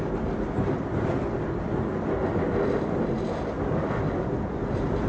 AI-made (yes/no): no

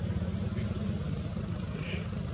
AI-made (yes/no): no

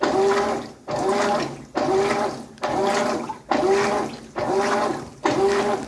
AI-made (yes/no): no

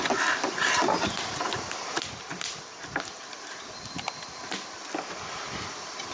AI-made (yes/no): no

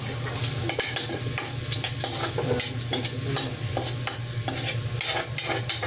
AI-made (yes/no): no